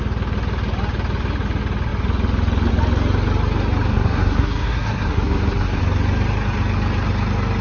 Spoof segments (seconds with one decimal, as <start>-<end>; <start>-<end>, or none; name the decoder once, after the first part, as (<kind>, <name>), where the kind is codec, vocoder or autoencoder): 3.9-5.8 (codec, SNAC)